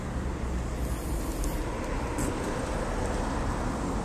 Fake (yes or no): no